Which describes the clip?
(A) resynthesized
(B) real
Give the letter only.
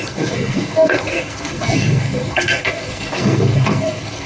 A